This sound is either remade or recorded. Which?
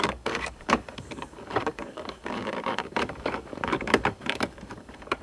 remade